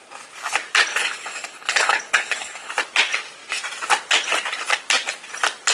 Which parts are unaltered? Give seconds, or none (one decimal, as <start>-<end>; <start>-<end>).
0.0-0.9; 2.7-5.7